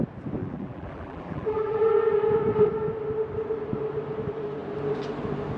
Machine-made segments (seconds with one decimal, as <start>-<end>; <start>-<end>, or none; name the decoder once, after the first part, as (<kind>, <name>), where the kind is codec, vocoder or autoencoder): 0.4-1.9 (vocoder, BigVGAN v2)